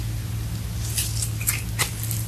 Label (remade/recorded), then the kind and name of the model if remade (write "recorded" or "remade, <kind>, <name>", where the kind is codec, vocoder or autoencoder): recorded